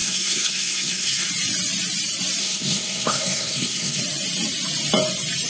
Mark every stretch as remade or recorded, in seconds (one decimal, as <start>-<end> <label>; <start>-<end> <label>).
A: 0.0-1.3 remade; 1.3-2.4 recorded; 2.4-4.0 remade; 4.0-5.5 recorded

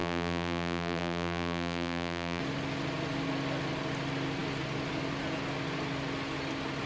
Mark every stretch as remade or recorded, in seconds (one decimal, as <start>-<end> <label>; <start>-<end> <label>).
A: 0.0-2.4 remade; 2.4-6.9 recorded

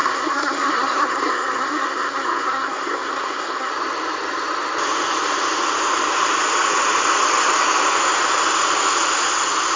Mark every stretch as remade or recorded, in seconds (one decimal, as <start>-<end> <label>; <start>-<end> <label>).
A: 0.0-3.7 remade; 3.7-9.8 recorded

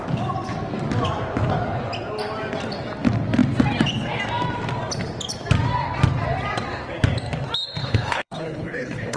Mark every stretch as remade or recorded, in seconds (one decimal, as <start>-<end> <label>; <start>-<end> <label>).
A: 0.0-7.8 recorded; 7.8-9.2 remade

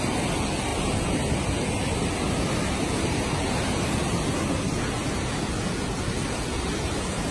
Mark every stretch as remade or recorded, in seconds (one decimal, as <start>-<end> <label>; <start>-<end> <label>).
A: 0.0-7.3 recorded

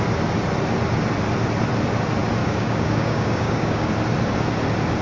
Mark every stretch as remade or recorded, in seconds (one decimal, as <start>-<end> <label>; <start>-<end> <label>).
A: 0.0-2.4 recorded; 2.4-3.9 remade; 3.9-5.0 recorded